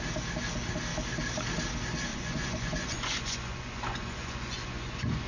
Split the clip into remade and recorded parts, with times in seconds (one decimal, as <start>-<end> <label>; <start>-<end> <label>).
0.0-2.1 recorded; 2.1-5.3 remade